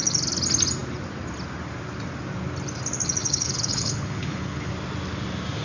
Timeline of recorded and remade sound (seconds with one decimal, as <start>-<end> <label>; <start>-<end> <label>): 0.0-3.2 recorded; 3.2-4.7 remade; 4.7-5.6 recorded